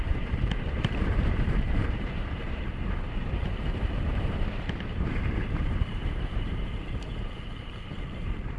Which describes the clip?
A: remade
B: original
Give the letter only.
A